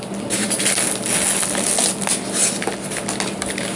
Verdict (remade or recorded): recorded